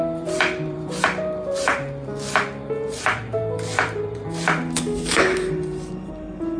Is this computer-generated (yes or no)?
yes